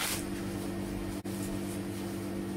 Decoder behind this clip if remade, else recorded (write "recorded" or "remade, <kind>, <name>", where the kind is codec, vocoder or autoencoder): recorded